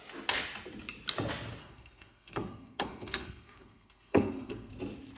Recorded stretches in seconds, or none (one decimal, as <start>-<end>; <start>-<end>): 0.0-1.6; 4.7-5.2